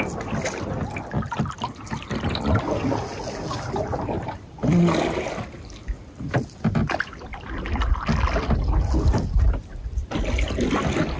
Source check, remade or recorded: recorded